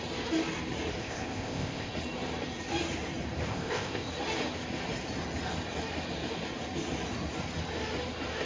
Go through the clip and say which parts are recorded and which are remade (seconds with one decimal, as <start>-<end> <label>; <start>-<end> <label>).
0.0-1.0 recorded; 1.0-1.9 remade; 1.9-3.5 recorded; 3.5-4.1 remade; 4.1-8.4 recorded